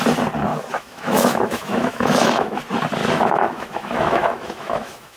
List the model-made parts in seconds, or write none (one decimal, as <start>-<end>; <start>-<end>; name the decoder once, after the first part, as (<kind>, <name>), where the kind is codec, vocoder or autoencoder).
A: 0.5-2.6 (autoencoder, DAC-VAE); 3.0-5.2